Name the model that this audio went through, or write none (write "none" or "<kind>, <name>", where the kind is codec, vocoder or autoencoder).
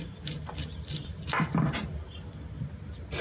none